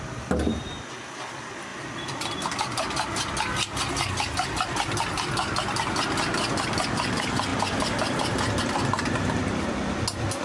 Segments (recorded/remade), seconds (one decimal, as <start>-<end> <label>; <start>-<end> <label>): 0.0-1.7 recorded; 1.7-2.5 remade; 2.5-10.4 recorded